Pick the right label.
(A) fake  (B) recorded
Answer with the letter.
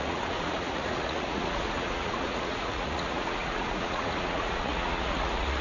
A